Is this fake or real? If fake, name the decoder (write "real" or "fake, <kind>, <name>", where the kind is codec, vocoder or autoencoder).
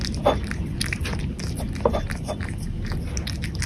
real